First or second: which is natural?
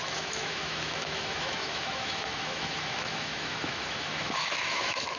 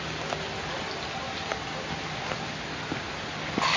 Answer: second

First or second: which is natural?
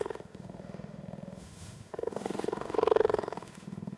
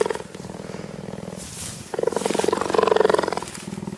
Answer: second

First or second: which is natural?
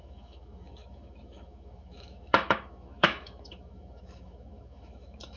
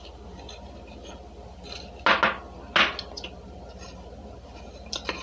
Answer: second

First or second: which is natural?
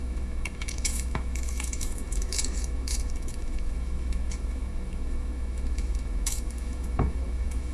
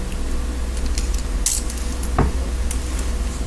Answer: second